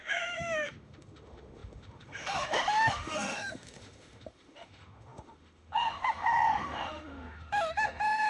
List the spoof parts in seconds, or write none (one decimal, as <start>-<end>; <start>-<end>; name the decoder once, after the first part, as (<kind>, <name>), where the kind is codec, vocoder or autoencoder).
0.0-8.3 (autoencoder, DAC-VAE)